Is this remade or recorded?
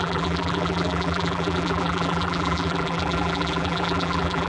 remade